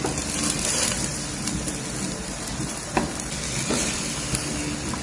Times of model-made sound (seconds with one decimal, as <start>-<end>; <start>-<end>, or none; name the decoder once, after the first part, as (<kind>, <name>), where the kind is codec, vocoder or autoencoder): none